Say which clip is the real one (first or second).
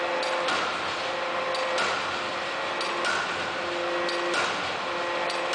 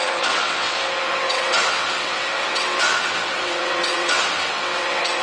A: first